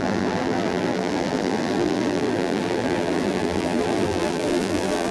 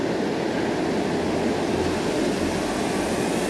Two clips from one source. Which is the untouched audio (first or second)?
second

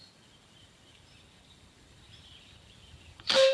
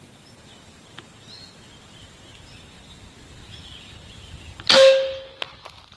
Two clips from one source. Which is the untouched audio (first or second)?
second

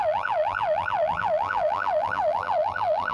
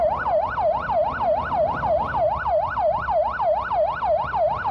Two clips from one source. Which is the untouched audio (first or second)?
second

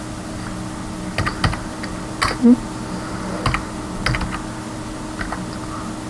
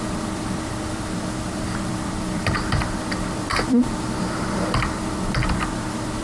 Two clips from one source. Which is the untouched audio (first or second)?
first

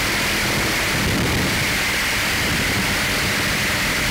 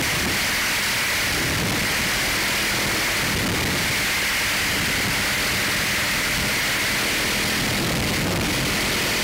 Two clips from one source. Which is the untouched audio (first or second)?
second